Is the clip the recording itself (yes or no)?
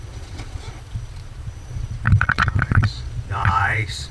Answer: no